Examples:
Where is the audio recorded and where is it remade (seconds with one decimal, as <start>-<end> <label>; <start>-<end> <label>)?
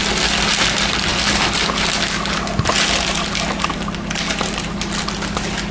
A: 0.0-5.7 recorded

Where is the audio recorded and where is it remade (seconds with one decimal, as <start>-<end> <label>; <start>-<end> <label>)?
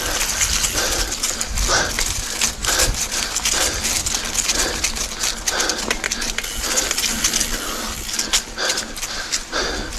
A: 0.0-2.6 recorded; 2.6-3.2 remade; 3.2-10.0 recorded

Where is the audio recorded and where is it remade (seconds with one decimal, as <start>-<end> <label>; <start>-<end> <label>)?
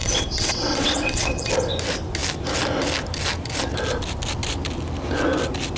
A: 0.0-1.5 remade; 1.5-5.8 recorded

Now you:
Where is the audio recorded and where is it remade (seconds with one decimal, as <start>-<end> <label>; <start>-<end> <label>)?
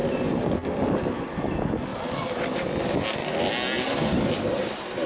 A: 0.0-5.1 recorded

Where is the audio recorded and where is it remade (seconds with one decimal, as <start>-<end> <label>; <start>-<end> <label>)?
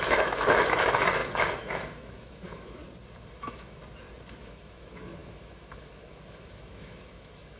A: 0.0-2.8 remade; 2.8-3.4 recorded; 3.4-3.8 remade; 3.8-4.4 recorded; 4.4-7.6 remade